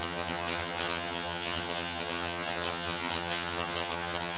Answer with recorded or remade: remade